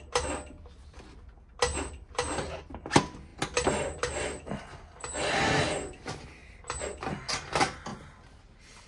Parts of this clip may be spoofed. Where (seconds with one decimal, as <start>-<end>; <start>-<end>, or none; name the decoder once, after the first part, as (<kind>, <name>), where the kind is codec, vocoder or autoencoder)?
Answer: none